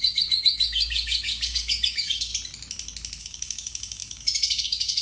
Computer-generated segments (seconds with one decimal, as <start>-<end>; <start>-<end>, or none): 0.0-2.3; 3.2-5.0